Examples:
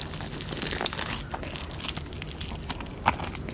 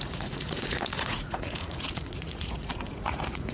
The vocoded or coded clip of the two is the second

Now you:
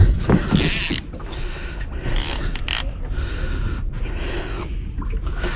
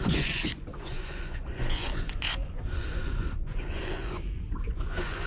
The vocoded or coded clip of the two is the second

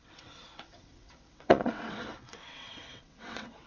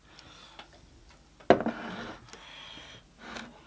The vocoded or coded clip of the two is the first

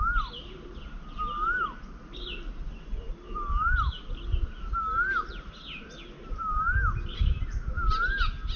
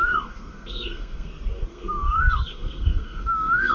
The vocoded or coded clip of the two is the second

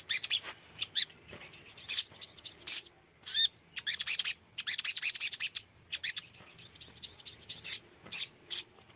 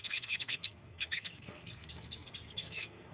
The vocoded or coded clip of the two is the second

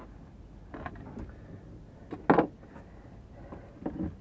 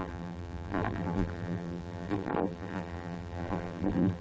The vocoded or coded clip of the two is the second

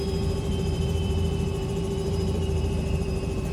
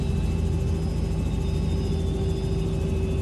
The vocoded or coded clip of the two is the first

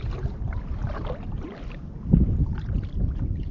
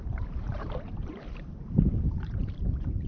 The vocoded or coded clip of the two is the second